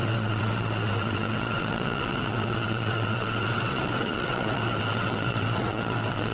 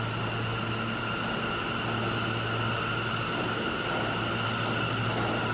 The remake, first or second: first